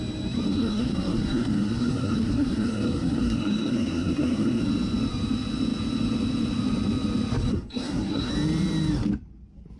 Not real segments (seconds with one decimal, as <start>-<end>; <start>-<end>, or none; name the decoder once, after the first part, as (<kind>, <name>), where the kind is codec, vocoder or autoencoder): 0.5-4.6 (codec, SNAC); 7.5-8.3